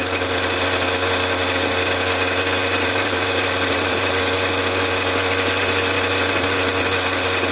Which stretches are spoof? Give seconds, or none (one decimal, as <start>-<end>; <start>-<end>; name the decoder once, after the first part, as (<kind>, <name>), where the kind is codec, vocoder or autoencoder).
2.6-4.2 (vocoder, BigVGAN v2)